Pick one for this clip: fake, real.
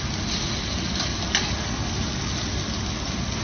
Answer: real